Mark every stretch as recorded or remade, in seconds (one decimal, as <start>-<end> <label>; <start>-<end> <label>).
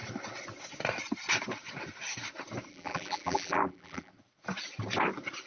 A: 0.0-2.7 recorded; 2.7-4.1 remade; 4.1-5.5 recorded